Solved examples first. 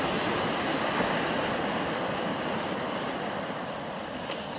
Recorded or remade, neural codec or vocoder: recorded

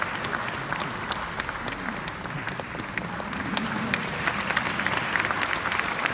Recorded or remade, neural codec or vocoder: recorded